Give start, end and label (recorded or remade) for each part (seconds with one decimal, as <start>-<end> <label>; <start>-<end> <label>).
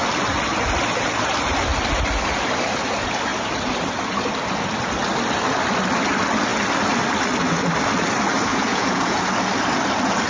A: 0.0-8.5 recorded; 8.5-9.2 remade; 9.2-10.3 recorded